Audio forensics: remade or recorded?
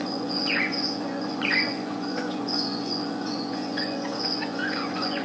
remade